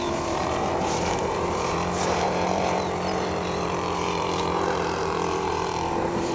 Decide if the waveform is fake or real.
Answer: fake